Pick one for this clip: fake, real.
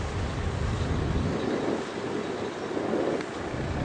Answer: real